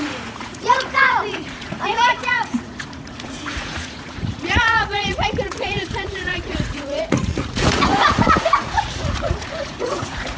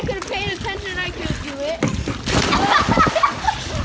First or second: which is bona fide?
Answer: second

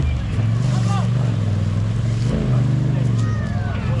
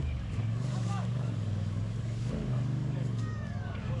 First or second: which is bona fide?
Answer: first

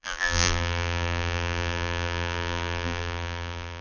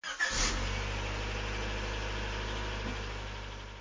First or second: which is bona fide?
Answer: second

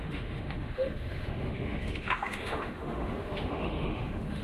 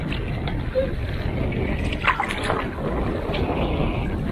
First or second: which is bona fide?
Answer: second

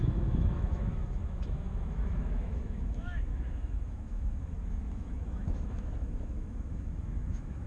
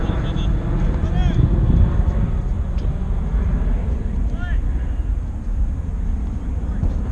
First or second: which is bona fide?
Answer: second